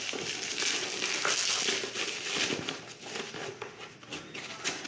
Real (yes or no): yes